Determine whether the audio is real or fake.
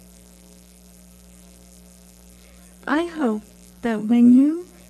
fake